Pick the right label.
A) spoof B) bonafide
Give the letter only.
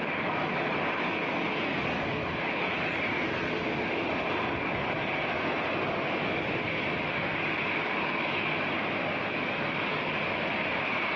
B